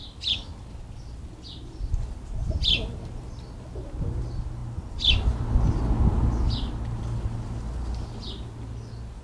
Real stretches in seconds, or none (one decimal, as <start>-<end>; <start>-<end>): 0.0-9.2